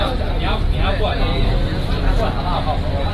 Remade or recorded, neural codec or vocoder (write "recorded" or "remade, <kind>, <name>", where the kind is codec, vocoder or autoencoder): recorded